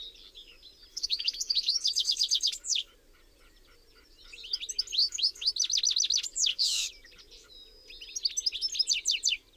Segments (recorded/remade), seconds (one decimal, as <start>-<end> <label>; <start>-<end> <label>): 0.0-0.9 recorded; 0.9-2.9 remade; 2.9-5.0 recorded; 5.0-5.5 remade; 5.5-6.3 recorded; 6.3-6.9 remade; 6.9-9.6 recorded